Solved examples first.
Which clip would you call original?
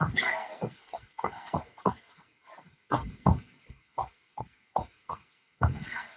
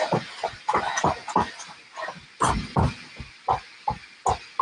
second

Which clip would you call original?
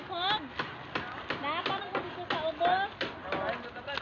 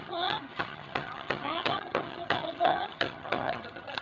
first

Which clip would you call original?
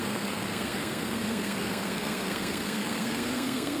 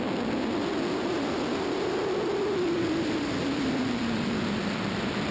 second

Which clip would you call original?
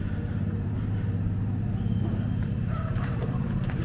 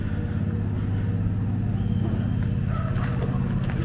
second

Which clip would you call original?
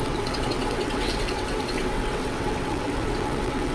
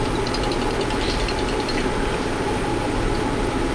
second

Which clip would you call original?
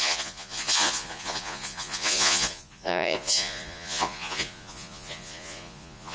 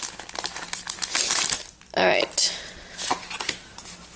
second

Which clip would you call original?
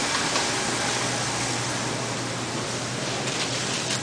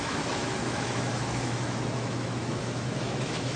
first